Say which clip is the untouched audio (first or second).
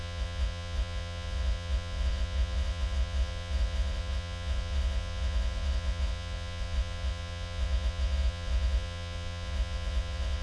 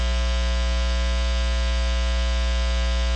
second